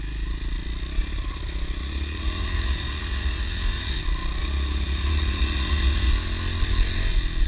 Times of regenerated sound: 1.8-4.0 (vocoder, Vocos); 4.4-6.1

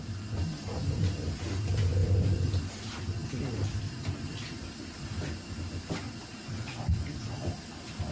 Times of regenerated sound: 2.0-2.7 (vocoder, BigVGAN v2); 3.2-5.1

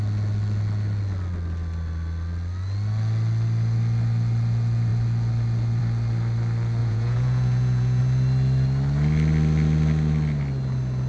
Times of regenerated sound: 6.8-8.0 (vocoder, Vocos)

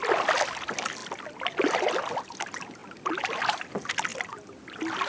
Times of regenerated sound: none

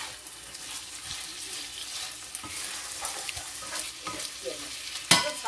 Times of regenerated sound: 1.3-4.6 (vocoder, BigVGAN v2)